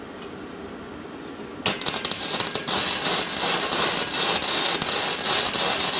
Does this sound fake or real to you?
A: real